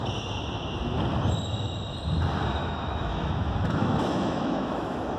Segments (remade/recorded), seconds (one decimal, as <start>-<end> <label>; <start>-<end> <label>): 0.0-2.6 recorded; 2.6-5.2 remade